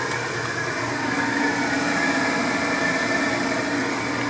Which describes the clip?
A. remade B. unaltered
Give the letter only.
B